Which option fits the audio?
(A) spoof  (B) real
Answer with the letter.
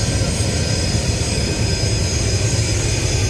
B